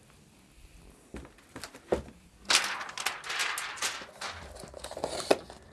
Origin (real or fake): real